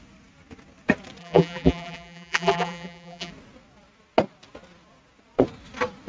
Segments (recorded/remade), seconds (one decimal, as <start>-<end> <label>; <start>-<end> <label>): 0.0-1.2 recorded; 1.2-3.3 remade; 3.3-6.1 recorded